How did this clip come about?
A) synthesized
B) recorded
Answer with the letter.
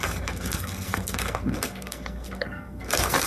A